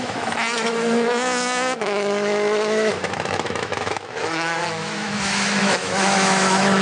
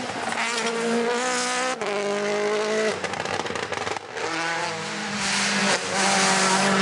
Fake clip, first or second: first